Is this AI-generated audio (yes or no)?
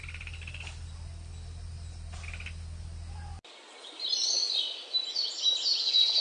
no